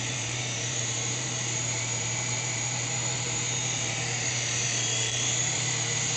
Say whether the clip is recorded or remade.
remade